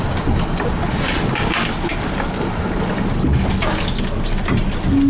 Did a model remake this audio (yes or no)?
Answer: no